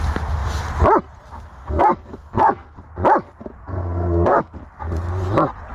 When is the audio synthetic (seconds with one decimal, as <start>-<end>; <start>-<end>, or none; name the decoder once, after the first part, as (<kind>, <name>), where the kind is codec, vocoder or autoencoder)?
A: 1.6-2.8 (codec, SNAC); 3.6-4.6